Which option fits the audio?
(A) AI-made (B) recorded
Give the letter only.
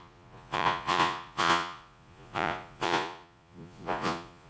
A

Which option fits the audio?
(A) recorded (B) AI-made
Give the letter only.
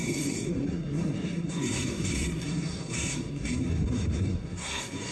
B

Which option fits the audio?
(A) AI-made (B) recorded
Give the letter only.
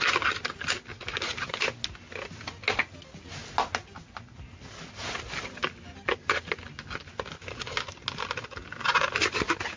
B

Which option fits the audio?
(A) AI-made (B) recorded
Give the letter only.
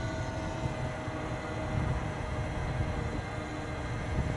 B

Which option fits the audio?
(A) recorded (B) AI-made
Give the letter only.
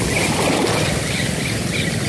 A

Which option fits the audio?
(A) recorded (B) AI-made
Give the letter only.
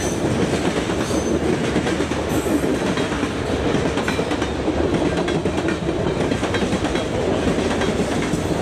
A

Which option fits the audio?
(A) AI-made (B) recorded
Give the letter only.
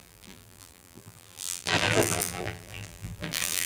A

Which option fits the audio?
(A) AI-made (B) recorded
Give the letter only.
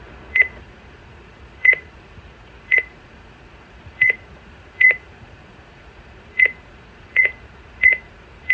A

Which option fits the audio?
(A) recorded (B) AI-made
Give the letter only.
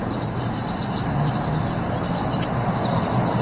A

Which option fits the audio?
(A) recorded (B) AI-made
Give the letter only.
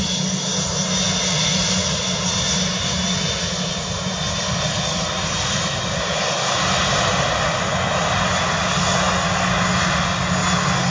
A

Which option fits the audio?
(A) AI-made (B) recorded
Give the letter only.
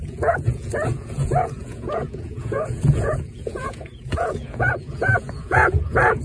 A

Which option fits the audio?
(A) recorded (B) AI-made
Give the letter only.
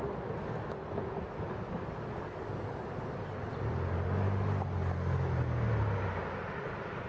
A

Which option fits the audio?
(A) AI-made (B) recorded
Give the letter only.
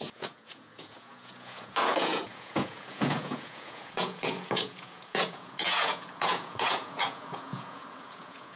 A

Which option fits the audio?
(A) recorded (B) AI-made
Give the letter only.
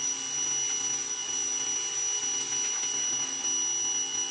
A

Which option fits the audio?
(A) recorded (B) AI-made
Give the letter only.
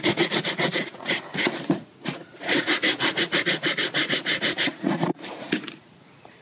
B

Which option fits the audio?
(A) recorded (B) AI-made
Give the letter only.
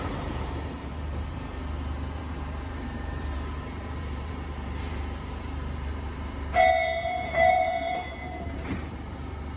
B